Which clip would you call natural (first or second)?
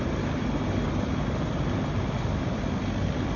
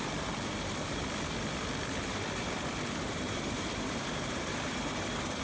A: first